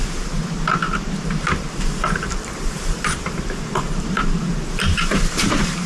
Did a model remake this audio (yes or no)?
yes